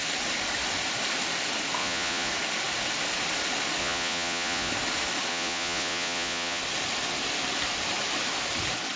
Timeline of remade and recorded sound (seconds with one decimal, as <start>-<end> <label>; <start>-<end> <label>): 0.0-1.8 recorded; 1.8-2.3 remade; 2.3-3.8 recorded; 3.8-4.7 remade; 4.7-5.3 recorded; 5.3-6.6 remade; 6.6-9.0 recorded